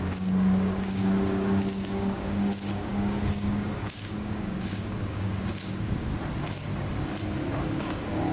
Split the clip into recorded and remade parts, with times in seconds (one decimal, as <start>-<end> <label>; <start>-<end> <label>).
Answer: 0.0-6.1 remade; 6.1-7.5 recorded; 7.5-8.3 remade